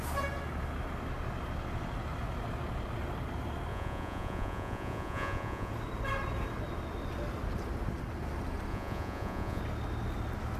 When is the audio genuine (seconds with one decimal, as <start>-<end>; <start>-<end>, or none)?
0.0-3.7; 5.7-8.7; 9.6-10.6